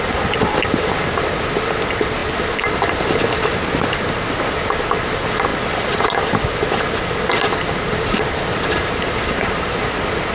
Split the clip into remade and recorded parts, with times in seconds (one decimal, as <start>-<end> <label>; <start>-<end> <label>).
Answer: 0.0-10.3 recorded